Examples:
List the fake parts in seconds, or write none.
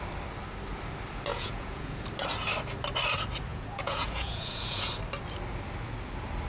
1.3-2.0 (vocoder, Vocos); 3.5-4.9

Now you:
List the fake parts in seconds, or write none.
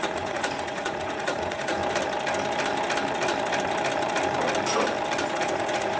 0.0-1.8 (vocoder, Vocos); 5.4-6.0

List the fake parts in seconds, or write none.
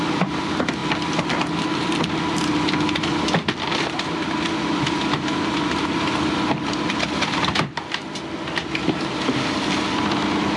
0.0-0.8 (vocoder, BigVGAN v2); 1.3-10.6